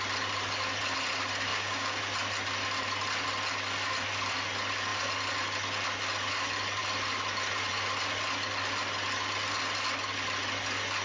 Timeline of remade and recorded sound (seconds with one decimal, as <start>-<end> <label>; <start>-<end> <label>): 0.0-1.5 recorded; 1.5-2.0 remade; 2.0-11.0 recorded